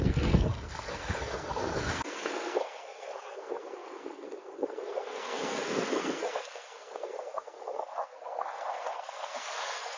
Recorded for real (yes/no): no